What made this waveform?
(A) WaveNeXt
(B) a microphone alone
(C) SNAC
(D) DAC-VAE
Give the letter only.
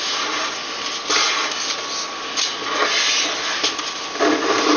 B